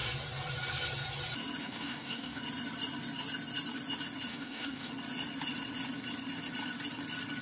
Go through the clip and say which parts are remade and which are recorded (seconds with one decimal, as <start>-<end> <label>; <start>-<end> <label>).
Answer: 0.0-1.6 recorded; 1.6-2.4 remade; 2.4-4.3 recorded; 4.3-4.9 remade; 4.9-7.4 recorded

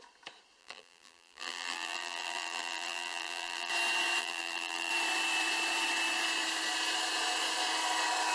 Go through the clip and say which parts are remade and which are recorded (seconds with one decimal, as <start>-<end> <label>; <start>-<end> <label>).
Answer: 0.0-0.6 recorded; 0.6-3.7 remade; 3.7-4.2 recorded; 4.2-4.9 remade; 4.9-8.3 recorded

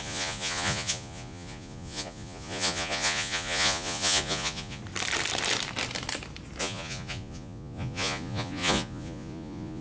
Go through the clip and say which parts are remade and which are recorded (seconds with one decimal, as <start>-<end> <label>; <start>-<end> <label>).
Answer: 0.0-4.8 remade; 4.8-6.6 recorded; 6.6-9.8 remade

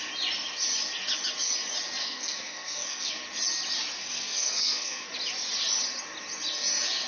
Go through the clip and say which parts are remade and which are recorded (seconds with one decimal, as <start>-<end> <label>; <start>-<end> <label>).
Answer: 0.0-2.0 recorded; 2.0-3.1 remade; 3.1-4.0 recorded; 4.0-5.1 remade; 5.1-7.1 recorded

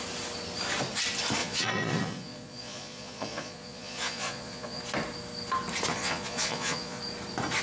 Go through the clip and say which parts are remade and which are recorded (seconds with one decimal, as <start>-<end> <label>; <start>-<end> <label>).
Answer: 0.0-1.4 recorded; 1.4-4.8 remade; 4.8-5.9 recorded; 5.9-7.0 remade; 7.0-7.6 recorded

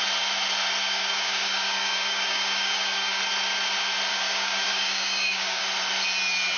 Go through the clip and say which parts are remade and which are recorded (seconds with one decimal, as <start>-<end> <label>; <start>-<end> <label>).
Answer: 0.0-0.8 recorded; 0.8-3.2 remade; 3.2-4.1 recorded; 4.1-5.6 remade; 5.6-6.6 recorded

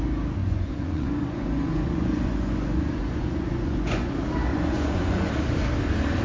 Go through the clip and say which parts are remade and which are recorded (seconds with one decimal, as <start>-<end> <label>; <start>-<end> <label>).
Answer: 0.0-0.4 recorded; 0.4-4.1 remade; 4.1-4.5 recorded; 4.5-5.3 remade; 5.3-6.2 recorded